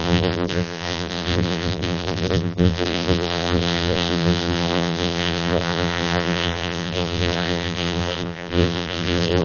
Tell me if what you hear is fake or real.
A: fake